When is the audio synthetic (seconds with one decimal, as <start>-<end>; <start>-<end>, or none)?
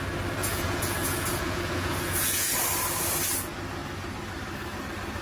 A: 0.4-2.5